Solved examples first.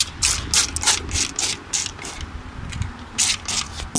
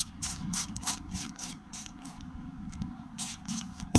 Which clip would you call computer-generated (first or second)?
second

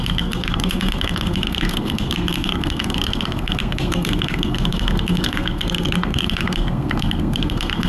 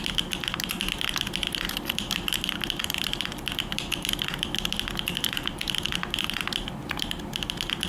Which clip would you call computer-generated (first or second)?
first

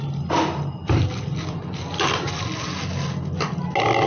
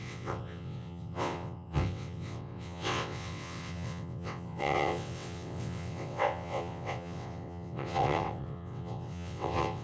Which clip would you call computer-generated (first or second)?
second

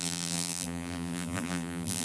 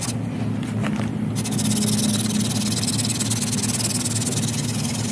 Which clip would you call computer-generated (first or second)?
first